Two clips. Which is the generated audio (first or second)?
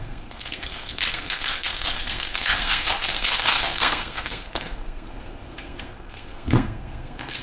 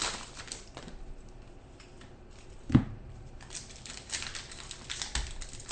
first